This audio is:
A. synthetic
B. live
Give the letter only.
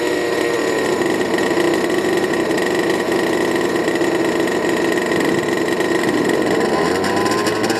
B